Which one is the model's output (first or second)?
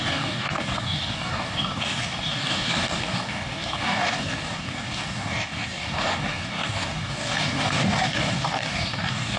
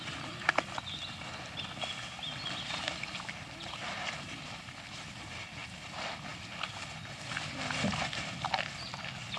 first